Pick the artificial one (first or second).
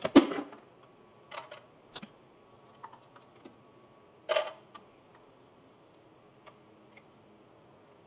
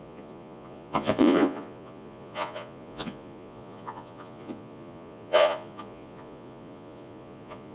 second